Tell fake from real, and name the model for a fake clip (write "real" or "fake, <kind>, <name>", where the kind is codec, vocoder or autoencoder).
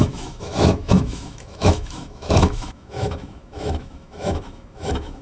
fake, autoencoder, DAC-VAE